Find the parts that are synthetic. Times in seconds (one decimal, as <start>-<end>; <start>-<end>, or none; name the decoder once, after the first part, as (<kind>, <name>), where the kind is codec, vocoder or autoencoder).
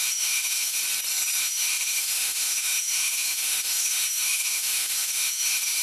0.0-0.8 (autoencoder, DAC-VAE); 1.4-5.8